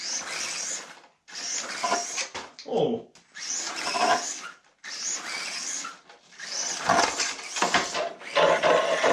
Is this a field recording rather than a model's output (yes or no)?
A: yes